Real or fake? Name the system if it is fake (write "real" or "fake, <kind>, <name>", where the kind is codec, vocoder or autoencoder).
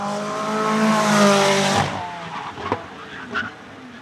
real